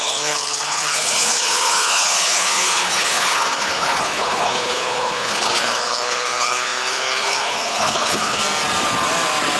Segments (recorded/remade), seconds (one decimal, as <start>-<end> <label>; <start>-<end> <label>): 0.0-8.4 remade; 8.4-9.6 recorded